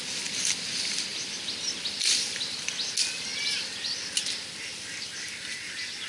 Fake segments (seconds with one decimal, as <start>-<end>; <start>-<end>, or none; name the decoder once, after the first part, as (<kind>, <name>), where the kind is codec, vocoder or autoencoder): none